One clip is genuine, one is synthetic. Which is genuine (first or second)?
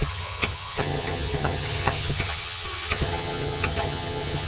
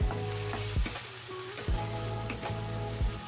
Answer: second